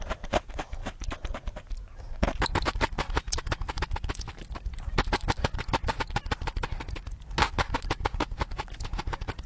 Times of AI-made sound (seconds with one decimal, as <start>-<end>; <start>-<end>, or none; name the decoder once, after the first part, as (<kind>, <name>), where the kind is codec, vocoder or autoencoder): none